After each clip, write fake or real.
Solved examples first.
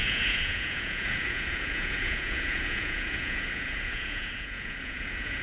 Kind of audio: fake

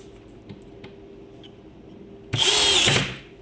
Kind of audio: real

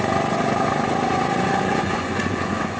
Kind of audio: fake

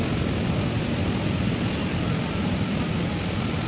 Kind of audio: real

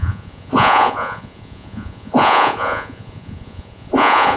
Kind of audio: fake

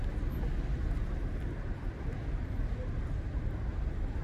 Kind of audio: real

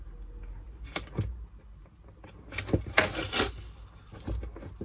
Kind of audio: real